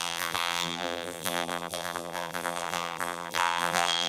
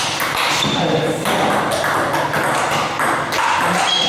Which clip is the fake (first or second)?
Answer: first